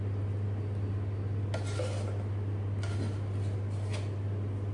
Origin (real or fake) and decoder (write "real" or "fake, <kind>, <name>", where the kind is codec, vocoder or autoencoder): real